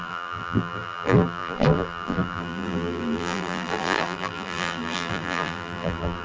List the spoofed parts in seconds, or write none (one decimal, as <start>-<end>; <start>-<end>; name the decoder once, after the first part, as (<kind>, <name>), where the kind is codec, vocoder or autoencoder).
0.0-6.2 (vocoder, BigVGAN v2)